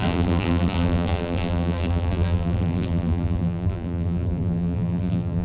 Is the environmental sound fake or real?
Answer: fake